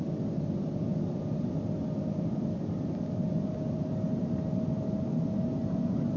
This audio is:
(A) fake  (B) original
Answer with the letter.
B